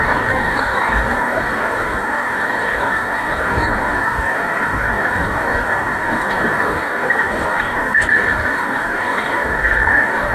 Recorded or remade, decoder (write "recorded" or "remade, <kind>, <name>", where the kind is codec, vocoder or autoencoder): remade, codec, DAC